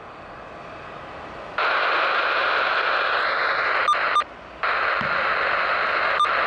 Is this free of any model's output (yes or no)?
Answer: yes